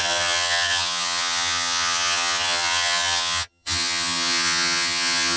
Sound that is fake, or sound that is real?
fake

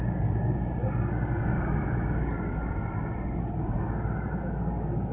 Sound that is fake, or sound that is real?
real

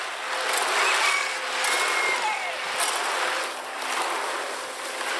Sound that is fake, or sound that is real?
real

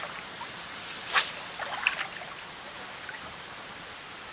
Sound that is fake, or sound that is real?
real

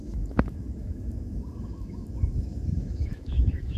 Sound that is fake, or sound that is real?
fake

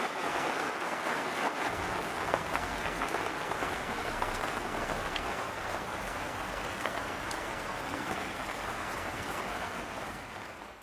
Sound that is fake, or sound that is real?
fake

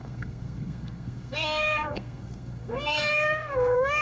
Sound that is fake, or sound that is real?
fake